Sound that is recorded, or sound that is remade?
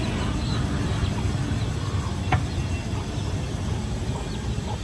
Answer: recorded